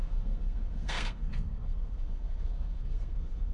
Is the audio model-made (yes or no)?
yes